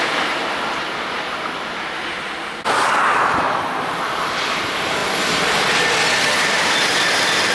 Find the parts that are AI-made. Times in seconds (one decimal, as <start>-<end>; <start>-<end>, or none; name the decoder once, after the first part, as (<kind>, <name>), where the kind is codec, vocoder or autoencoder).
none